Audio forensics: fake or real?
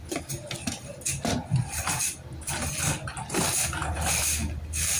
real